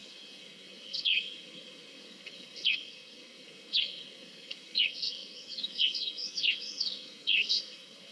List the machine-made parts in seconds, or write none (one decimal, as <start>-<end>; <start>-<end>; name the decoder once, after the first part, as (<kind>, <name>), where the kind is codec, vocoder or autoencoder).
0.0-8.1 (codec, SNAC)